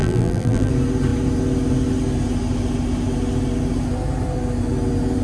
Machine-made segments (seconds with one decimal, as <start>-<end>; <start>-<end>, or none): 0.0-0.7